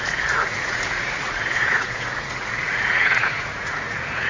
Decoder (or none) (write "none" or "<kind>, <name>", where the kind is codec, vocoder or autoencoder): vocoder, Vocos